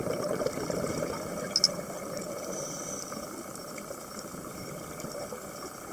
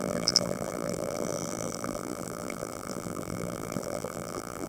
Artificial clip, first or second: second